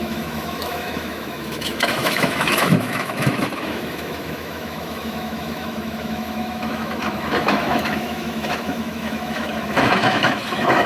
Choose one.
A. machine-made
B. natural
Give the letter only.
A